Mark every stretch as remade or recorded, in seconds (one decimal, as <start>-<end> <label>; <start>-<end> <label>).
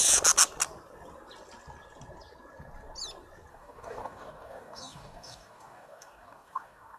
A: 0.0-3.5 recorded; 3.5-7.0 remade